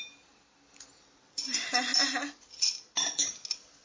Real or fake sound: real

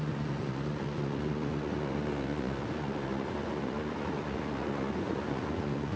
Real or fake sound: fake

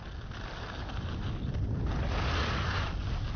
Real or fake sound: real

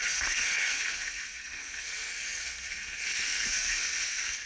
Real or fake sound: fake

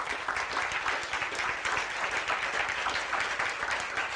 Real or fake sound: real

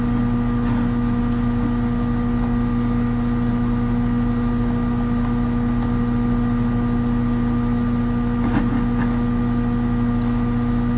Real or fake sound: real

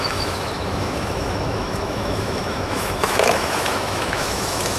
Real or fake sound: fake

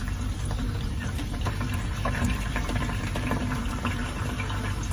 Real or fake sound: fake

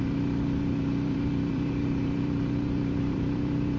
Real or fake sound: fake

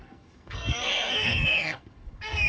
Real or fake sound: fake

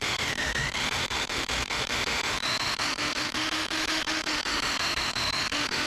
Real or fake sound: fake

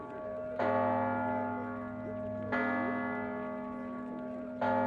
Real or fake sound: real